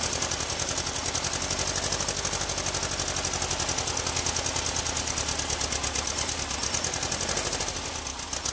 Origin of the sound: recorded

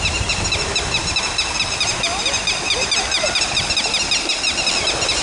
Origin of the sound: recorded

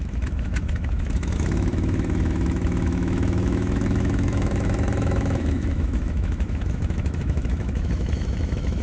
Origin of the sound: remade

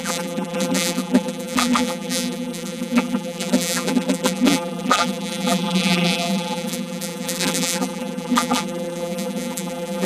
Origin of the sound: remade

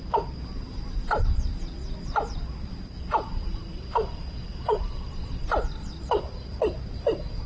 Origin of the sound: recorded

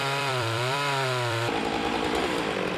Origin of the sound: remade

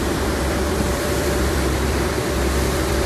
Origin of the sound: remade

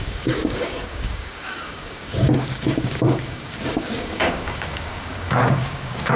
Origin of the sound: remade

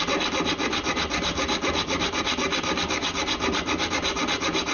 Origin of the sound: recorded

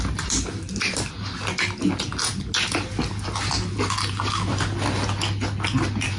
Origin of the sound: recorded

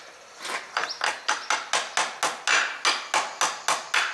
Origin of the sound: recorded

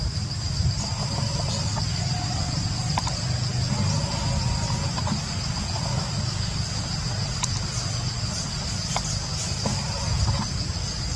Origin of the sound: recorded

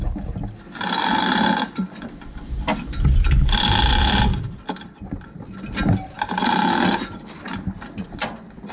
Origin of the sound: recorded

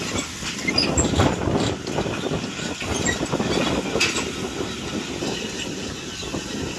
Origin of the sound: recorded